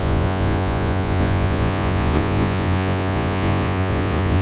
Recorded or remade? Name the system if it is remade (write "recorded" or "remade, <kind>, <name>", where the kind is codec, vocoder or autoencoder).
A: remade, vocoder, Vocos